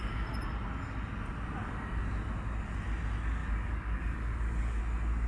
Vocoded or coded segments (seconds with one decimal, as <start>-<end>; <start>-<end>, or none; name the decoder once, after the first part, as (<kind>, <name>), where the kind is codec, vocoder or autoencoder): 3.4-4.8 (codec, DAC)